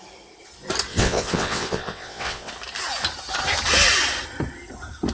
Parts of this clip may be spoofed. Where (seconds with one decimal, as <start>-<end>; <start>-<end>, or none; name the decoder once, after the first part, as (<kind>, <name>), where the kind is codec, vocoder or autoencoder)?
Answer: 0.9-2.5 (vocoder, WaveNeXt)